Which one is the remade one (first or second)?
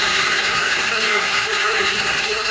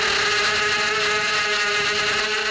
first